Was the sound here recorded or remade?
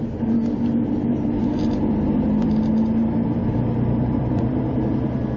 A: recorded